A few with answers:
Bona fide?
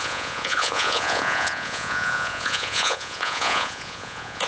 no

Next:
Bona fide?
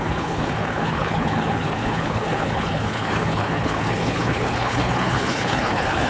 no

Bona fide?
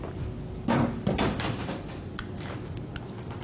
yes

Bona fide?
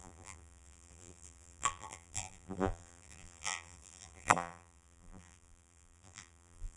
no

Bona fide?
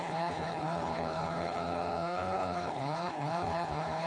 no